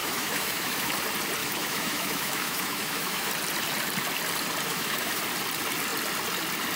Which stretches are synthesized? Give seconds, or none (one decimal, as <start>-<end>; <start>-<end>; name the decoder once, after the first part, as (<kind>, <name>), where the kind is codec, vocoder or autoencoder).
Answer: 0.0-0.9 (autoencoder, DAC-VAE); 1.4-3.3; 4.7-5.2